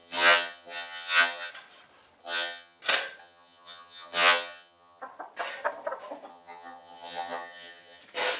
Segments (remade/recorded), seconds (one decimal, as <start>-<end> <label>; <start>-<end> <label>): 0.0-1.5 remade; 1.5-2.2 recorded; 2.2-2.8 remade; 2.8-3.2 recorded; 3.2-5.0 remade; 5.0-6.3 recorded; 6.3-8.0 remade; 8.0-8.4 recorded